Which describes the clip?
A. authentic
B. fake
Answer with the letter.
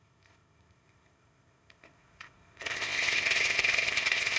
B